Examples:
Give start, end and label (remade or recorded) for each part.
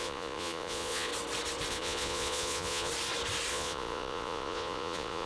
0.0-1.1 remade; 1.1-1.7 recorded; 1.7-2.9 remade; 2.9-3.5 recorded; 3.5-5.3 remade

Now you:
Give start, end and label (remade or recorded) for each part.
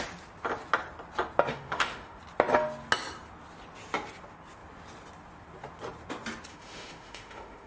0.0-1.5 recorded; 1.5-2.2 remade; 2.2-6.5 recorded; 6.5-7.7 remade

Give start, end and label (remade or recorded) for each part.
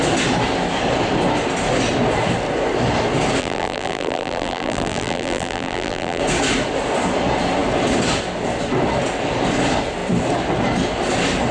0.0-3.4 recorded; 3.4-6.2 remade; 6.2-11.5 recorded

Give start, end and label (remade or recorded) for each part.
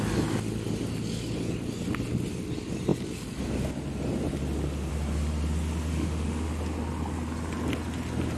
0.0-5.9 recorded; 5.9-6.5 remade; 6.5-8.4 recorded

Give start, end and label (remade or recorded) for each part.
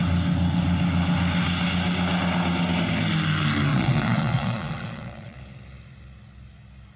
0.0-3.7 recorded; 3.7-5.4 remade; 5.4-7.0 recorded